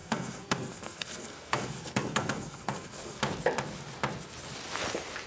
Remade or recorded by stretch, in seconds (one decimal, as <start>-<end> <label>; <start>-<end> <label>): 0.0-3.2 remade; 3.2-5.3 recorded